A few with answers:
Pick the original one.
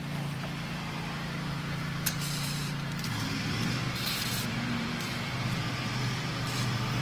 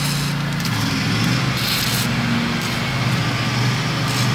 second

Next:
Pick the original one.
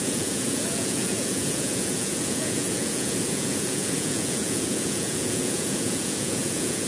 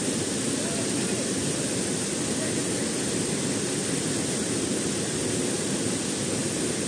second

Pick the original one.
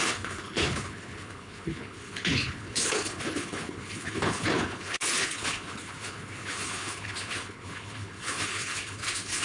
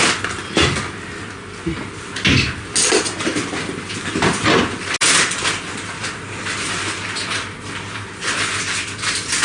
second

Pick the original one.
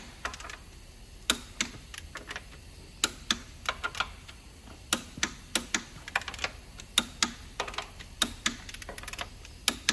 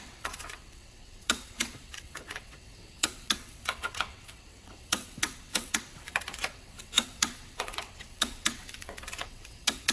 first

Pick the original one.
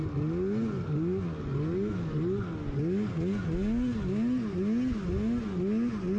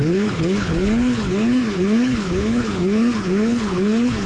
first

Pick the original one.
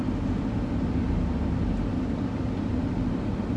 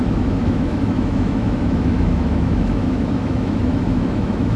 first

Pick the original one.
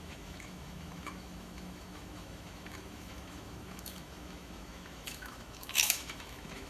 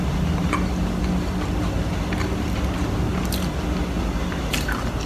second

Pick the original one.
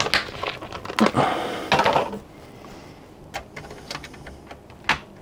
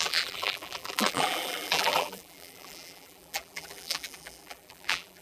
first